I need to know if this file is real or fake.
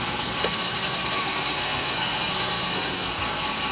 fake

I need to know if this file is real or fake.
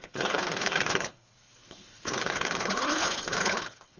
fake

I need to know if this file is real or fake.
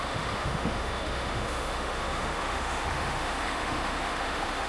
fake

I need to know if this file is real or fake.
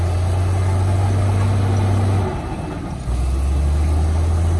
real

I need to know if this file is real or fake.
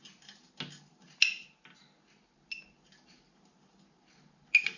real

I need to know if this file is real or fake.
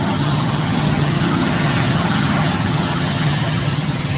fake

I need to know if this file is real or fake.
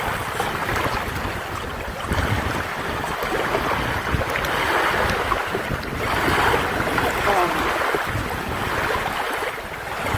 real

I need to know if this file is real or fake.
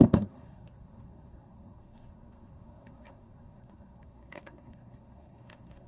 fake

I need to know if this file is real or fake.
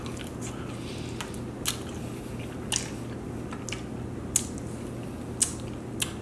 real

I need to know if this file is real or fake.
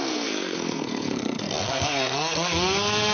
fake